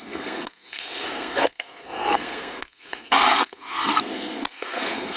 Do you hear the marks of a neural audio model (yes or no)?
yes